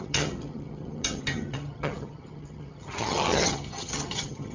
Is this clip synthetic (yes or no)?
yes